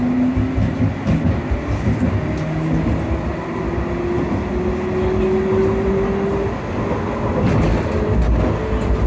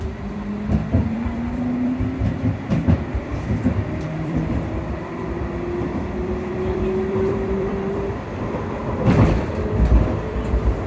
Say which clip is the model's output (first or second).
second